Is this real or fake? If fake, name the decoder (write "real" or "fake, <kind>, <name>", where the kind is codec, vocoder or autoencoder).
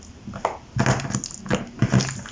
real